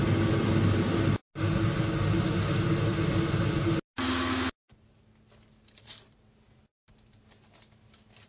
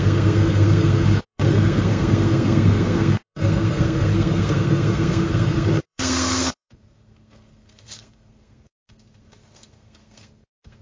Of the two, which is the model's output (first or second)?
second